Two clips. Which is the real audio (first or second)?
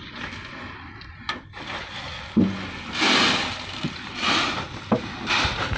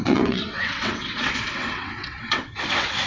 first